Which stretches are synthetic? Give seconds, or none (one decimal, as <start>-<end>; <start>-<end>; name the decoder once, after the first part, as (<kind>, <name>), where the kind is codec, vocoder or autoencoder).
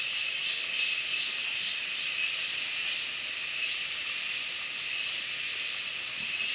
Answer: none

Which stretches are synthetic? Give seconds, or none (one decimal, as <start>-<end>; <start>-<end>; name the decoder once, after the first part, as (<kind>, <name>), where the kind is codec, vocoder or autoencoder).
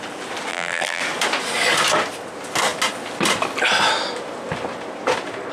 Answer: 0.5-1.0 (vocoder, BigVGAN v2)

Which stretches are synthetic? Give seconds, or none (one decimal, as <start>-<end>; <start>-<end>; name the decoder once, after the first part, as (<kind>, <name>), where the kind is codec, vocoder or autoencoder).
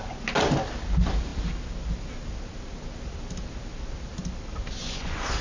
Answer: 4.8-5.4 (vocoder, Vocos)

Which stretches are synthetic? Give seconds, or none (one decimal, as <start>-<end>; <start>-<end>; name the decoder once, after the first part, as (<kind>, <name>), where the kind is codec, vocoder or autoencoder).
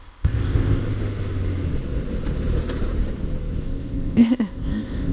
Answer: 0.0-0.8 (codec, ZipCodec); 3.6-5.1